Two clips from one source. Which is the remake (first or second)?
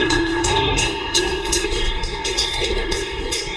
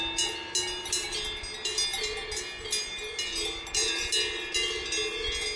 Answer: first